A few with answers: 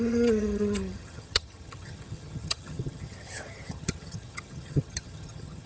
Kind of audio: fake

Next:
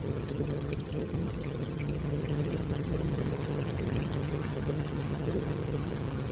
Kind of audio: fake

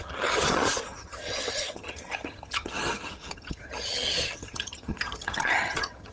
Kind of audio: fake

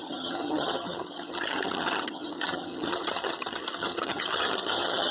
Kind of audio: fake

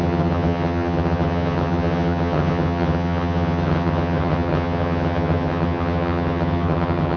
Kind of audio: fake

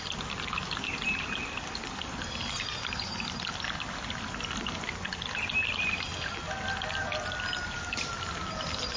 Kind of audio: real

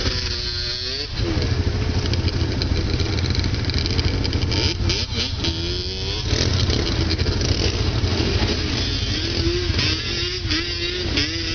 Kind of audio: real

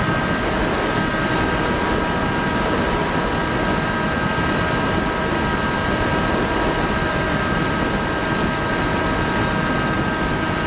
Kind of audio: real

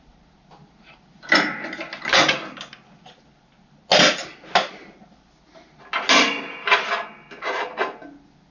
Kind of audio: real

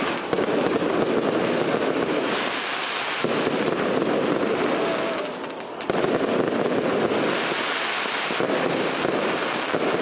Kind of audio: real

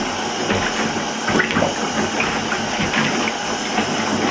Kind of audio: real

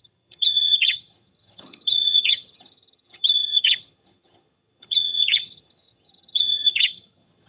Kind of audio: fake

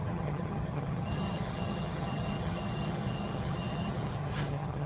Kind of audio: fake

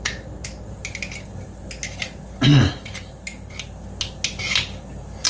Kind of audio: real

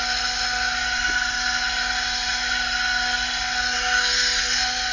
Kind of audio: real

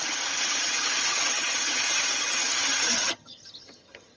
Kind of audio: fake